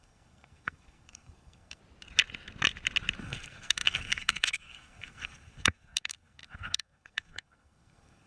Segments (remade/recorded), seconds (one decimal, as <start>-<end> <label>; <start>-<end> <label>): 0.0-1.8 remade; 1.8-3.2 recorded; 3.2-8.3 remade